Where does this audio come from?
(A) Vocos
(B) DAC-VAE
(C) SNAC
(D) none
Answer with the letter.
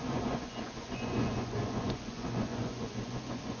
A